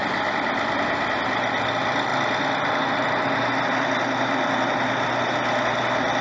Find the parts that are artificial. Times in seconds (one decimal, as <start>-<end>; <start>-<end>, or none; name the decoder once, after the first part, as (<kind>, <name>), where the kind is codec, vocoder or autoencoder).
none